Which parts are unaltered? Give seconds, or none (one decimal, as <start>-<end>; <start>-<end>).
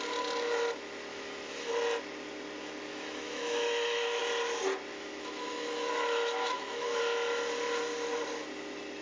0.0-1.1; 1.7-2.9; 4.2-4.9; 7.0-9.0